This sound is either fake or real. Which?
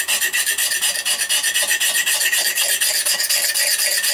real